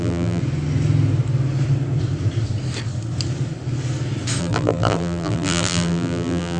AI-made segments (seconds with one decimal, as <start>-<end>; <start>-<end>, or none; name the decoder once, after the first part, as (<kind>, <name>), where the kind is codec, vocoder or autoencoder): 0.0-0.4 (vocoder, BigVGAN v2); 4.4-6.6